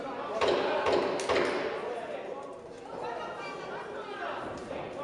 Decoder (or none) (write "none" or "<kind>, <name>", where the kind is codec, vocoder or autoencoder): none